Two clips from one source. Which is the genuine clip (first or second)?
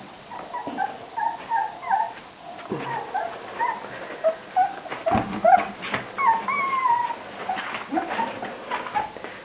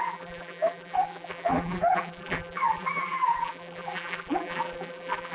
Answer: first